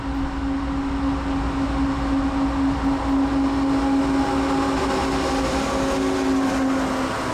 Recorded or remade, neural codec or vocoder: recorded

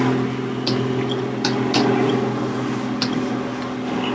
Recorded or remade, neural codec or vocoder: recorded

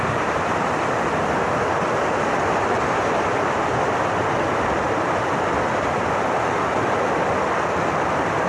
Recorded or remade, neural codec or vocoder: recorded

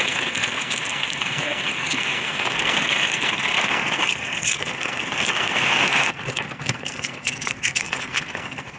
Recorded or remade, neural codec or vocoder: remade, codec, SNAC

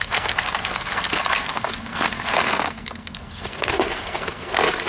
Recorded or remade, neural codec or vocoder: remade, codec, SNAC